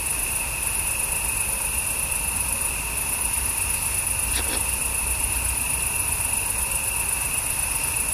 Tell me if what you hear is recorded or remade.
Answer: recorded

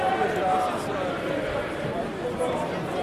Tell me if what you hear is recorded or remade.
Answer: recorded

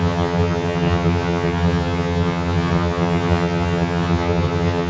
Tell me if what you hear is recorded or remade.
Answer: remade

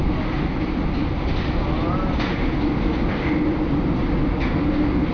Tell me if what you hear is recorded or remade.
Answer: recorded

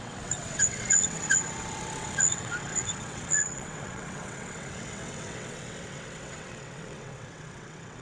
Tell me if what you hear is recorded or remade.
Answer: remade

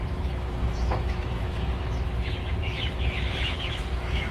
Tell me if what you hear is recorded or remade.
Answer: remade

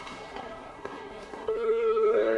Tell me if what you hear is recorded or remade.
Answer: remade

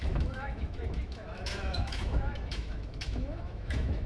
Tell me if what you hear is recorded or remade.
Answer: remade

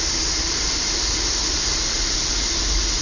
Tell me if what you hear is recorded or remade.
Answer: recorded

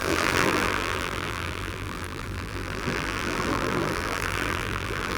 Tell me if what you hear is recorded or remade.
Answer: remade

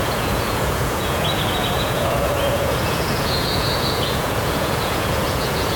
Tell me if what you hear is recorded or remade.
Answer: remade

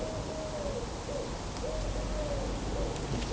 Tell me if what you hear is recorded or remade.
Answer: recorded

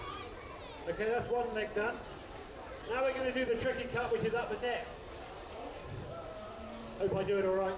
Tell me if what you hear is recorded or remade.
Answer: recorded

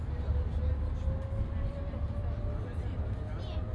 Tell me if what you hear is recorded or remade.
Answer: recorded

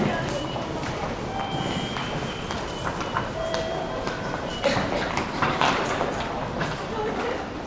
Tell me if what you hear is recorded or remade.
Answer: remade